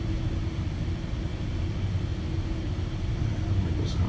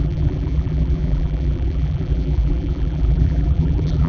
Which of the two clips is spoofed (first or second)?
second